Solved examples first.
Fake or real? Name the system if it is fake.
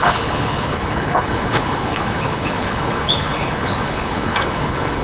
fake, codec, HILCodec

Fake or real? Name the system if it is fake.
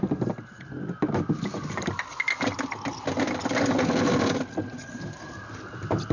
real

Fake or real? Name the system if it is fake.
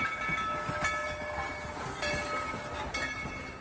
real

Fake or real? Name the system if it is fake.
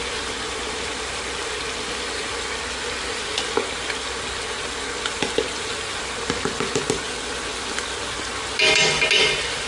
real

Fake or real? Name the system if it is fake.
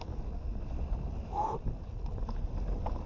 real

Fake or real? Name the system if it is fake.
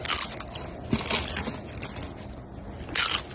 real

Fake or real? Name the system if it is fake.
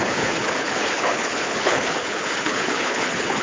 fake, codec, HILCodec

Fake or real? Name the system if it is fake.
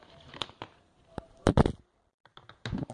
real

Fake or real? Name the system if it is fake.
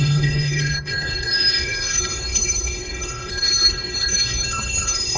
fake, codec, HILCodec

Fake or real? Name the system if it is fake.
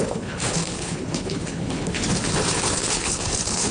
fake, codec, HILCodec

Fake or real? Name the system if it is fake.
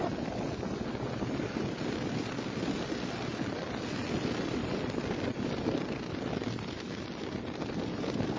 real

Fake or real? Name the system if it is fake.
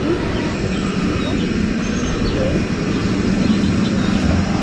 real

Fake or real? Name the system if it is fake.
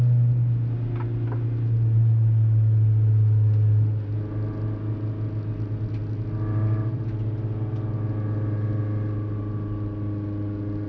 real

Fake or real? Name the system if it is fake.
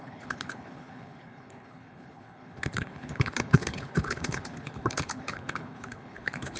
fake, codec, HILCodec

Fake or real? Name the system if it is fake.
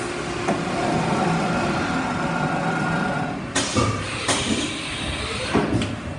real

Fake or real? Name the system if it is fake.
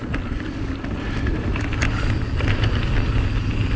real